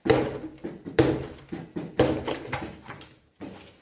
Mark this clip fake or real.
real